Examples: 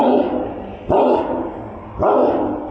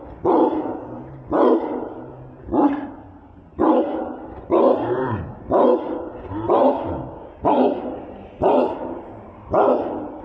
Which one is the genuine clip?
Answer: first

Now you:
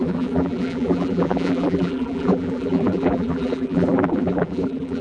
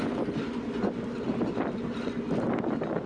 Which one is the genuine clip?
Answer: second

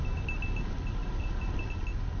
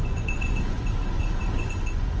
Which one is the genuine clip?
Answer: first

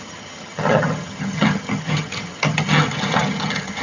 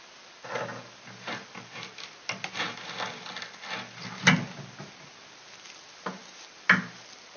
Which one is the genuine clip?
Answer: second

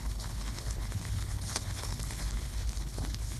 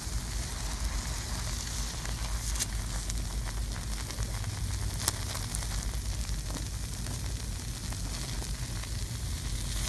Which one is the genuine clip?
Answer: second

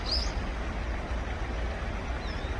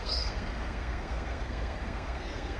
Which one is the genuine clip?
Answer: first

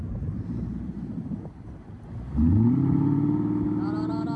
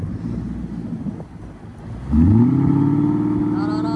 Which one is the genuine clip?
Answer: second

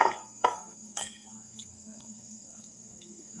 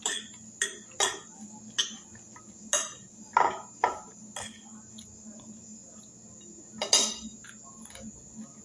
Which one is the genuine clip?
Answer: second